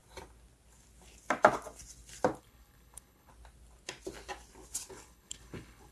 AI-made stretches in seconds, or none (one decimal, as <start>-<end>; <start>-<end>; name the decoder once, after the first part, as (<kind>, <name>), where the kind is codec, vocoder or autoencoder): 2.4-3.3 (codec, HILCodec); 4.9-5.9